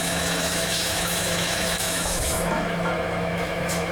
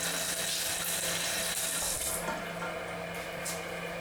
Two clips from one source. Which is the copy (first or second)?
first